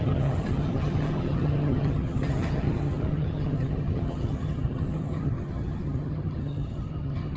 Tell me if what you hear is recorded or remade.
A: remade